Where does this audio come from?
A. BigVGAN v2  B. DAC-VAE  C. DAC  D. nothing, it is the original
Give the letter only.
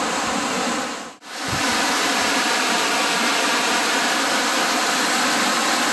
D